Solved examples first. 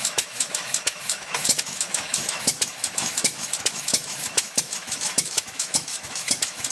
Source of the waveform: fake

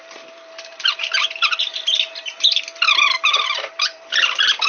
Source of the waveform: fake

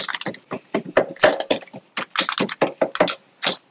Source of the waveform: real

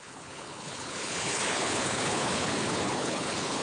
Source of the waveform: fake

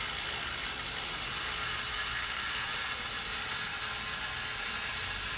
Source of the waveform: real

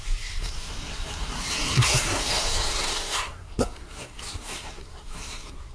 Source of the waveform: fake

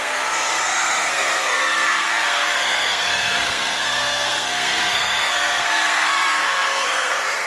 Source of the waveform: fake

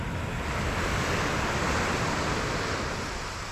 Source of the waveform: real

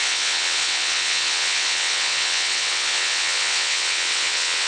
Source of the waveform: fake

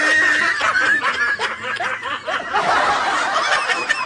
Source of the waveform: real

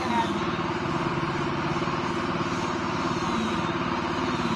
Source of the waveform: real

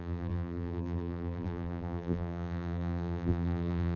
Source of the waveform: fake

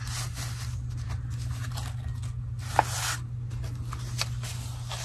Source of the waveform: real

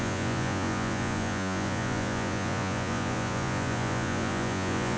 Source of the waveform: fake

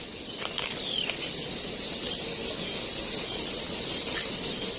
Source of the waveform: real